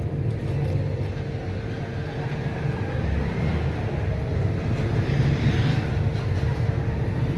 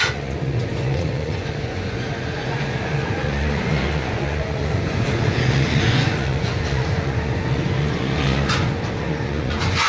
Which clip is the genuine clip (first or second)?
first